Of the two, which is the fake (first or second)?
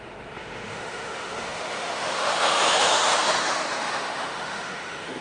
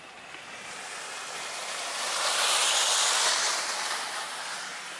first